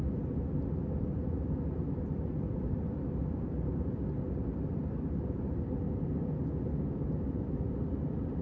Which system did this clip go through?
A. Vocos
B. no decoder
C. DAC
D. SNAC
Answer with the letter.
B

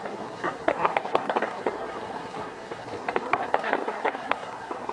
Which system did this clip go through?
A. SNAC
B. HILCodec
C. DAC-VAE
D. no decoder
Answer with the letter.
A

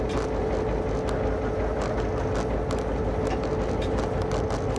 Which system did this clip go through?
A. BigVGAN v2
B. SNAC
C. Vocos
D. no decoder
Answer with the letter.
D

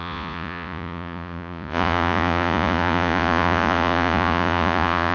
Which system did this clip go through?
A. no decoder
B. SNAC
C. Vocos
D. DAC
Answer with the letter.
C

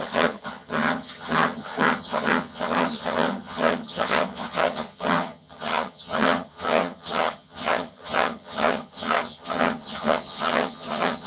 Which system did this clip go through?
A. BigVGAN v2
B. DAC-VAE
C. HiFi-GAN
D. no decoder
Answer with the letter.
C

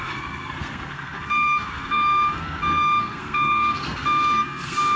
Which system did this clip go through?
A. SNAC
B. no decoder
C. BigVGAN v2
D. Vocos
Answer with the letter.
A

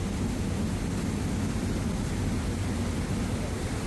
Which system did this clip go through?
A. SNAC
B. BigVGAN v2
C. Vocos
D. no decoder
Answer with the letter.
D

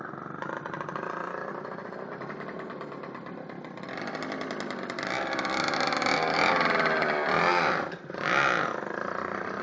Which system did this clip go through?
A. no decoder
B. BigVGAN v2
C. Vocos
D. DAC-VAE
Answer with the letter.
A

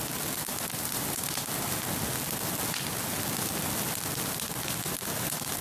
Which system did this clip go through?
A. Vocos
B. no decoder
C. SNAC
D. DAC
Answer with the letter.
B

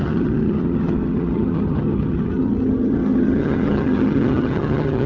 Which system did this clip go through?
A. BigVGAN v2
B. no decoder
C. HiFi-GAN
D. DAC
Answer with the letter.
C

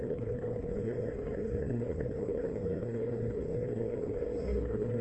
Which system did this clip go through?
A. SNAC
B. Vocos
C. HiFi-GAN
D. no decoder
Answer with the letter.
A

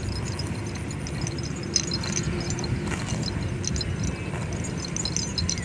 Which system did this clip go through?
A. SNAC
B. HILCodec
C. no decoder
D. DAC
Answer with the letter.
C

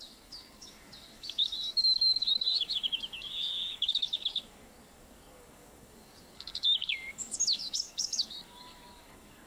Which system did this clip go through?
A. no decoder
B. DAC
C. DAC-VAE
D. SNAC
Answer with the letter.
B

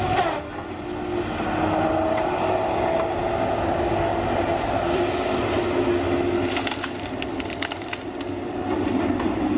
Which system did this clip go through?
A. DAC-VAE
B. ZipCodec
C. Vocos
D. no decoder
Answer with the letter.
D